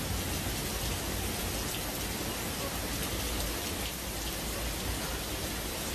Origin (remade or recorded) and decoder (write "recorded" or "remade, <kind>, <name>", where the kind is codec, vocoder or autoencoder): recorded